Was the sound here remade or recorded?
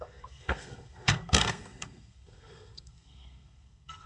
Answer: remade